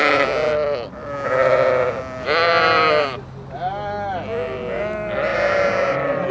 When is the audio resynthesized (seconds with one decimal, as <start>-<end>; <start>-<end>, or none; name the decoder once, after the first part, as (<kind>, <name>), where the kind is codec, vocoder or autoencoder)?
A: none